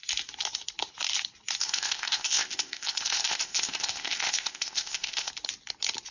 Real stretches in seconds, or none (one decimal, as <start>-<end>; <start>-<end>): 0.0-1.6; 5.3-6.1